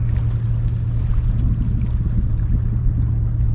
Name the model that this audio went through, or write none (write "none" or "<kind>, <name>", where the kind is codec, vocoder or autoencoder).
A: none